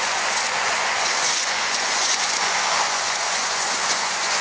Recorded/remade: remade